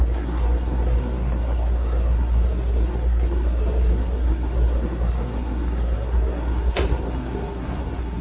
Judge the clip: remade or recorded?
remade